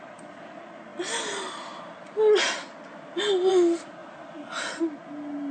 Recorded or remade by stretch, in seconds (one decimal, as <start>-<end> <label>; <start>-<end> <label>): 0.0-5.5 recorded